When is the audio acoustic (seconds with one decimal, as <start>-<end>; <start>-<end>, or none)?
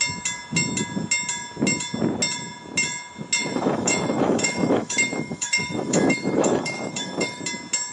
0.0-3.4; 7.4-7.9